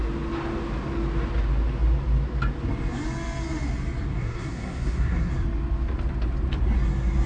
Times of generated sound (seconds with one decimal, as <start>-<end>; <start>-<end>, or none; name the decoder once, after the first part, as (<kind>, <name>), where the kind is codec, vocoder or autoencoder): 4.1-5.3 (codec, SNAC)